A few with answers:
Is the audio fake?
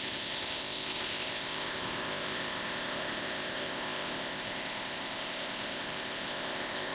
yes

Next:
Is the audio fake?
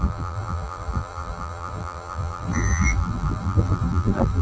yes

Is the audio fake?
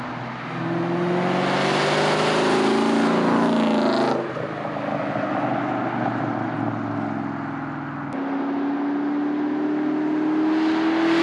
no